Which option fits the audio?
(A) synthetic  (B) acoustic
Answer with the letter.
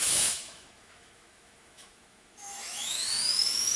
A